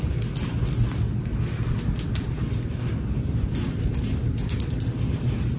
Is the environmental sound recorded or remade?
recorded